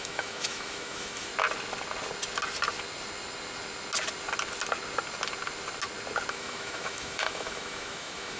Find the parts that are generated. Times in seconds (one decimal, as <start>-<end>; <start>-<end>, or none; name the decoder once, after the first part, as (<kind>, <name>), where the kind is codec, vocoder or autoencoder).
0.0-1.3 (autoencoder, DAC-VAE); 6.3-8.4